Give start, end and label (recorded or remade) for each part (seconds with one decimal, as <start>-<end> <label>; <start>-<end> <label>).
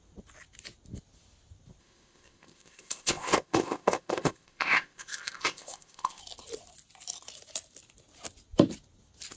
0.0-1.8 recorded; 1.8-6.2 remade; 6.2-9.4 recorded